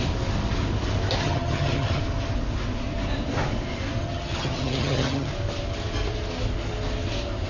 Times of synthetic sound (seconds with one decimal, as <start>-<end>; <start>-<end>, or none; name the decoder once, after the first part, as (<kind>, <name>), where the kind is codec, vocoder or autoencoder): 1.2-2.0 (vocoder, HiFi-GAN); 4.0-5.3